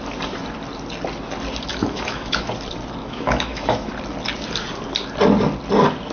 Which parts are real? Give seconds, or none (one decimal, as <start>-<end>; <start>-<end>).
0.0-1.7; 2.5-3.0; 3.9-6.1